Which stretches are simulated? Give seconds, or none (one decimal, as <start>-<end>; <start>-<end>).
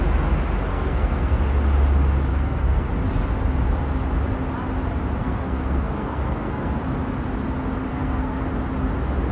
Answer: 0.7-1.4; 2.3-2.9; 5.2-6.8; 7.9-8.4